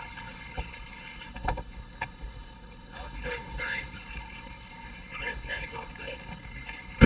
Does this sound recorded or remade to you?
remade